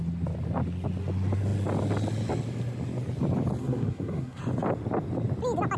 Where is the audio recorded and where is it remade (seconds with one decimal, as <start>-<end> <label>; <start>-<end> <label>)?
0.0-3.6 recorded; 3.6-4.4 remade; 4.4-5.8 recorded